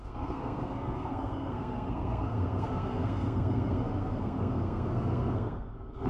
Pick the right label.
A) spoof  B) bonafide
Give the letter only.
A